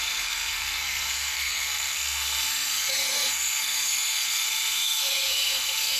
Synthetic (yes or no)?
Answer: yes